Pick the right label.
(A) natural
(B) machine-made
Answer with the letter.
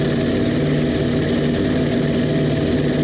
A